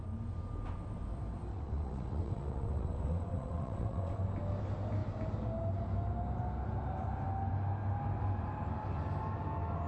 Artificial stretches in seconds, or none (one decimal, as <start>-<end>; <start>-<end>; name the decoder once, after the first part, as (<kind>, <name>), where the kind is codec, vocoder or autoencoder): 1.5-4.2 (vocoder, WaveNeXt)